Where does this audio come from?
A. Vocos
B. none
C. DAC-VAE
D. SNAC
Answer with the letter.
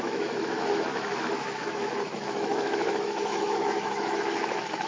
C